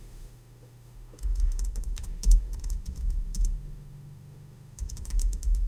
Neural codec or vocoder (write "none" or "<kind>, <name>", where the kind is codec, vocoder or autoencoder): autoencoder, DAC-VAE